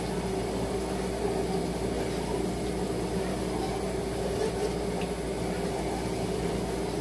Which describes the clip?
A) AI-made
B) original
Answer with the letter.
B